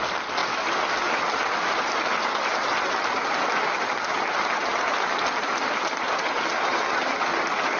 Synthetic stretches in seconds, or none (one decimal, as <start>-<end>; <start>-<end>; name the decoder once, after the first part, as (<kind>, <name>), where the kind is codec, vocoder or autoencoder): none